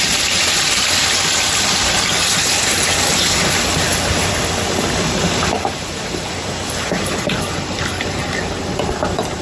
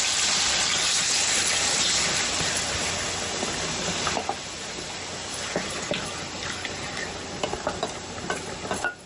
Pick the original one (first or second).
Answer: second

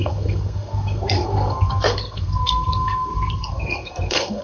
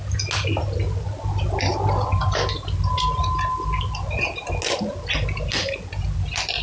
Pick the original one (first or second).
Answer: second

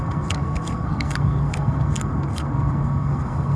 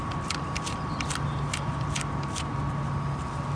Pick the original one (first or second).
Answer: second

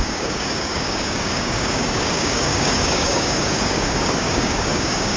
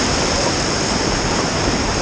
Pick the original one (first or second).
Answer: second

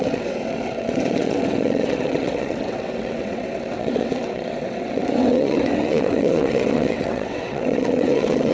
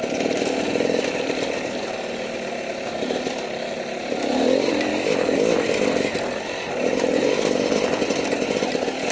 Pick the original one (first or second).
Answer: second